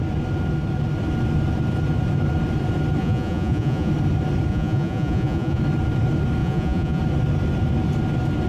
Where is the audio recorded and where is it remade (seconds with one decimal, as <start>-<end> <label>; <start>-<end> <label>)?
0.0-3.0 recorded; 3.0-3.9 remade; 3.9-4.5 recorded; 4.5-5.6 remade; 5.6-6.4 recorded; 6.4-7.0 remade; 7.0-8.5 recorded